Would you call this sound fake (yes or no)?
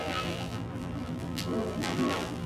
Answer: yes